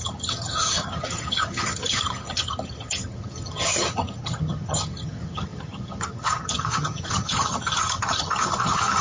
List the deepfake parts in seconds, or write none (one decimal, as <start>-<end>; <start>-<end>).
0.0-9.0